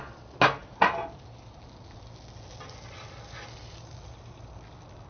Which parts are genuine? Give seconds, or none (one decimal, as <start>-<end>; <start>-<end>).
0.0-5.1